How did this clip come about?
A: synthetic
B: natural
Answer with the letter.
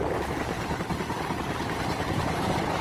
B